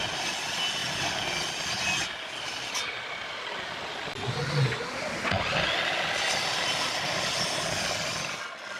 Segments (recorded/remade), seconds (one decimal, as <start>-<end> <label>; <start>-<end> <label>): 0.0-8.8 recorded